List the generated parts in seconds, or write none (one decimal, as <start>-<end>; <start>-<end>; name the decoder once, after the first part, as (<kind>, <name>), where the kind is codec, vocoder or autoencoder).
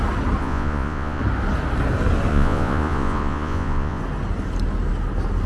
0.4-1.2 (vocoder, Vocos); 2.3-4.0